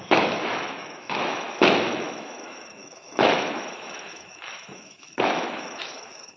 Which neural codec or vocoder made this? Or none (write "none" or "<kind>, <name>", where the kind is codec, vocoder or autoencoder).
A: autoencoder, DAC-VAE